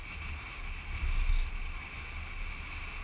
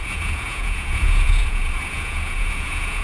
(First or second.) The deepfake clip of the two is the second